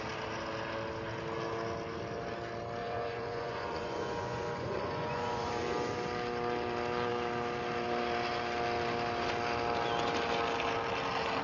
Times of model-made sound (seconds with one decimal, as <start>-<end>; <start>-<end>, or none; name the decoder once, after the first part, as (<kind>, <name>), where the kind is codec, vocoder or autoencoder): 2.8-5.5 (vocoder, Vocos)